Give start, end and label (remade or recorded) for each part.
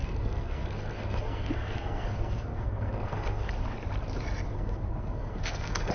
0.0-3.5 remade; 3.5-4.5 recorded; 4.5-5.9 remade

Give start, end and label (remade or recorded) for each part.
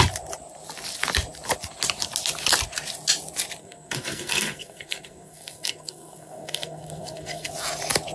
0.0-3.6 recorded; 3.6-7.5 remade; 7.5-8.1 recorded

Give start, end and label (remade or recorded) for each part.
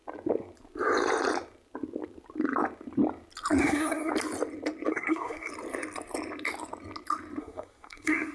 0.0-3.6 recorded; 3.6-4.1 remade; 4.1-4.9 recorded; 4.9-5.5 remade; 5.5-7.4 recorded; 7.4-8.3 remade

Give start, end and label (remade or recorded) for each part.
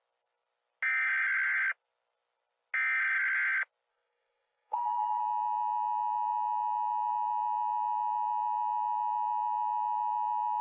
0.0-3.9 recorded; 3.9-5.2 remade; 5.2-10.6 recorded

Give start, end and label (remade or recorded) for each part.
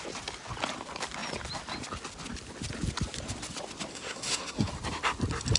0.0-3.9 recorded; 3.9-4.7 remade; 4.7-5.6 recorded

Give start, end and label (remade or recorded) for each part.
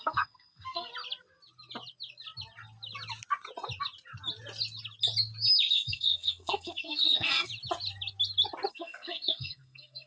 0.0-0.9 remade; 0.9-5.7 recorded; 5.7-7.5 remade; 7.5-8.7 recorded; 8.7-10.1 remade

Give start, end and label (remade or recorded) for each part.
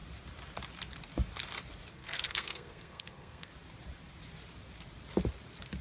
0.0-1.9 recorded; 1.9-3.5 remade; 3.5-5.8 recorded